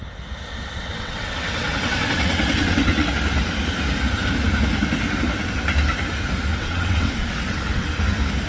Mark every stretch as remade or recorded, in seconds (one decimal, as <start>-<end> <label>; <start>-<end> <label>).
0.0-0.5 recorded; 0.5-3.1 remade; 3.1-6.5 recorded; 6.5-7.9 remade; 7.9-8.5 recorded